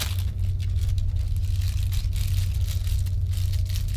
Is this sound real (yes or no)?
yes